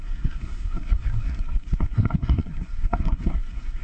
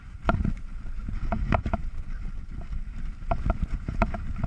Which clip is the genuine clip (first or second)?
second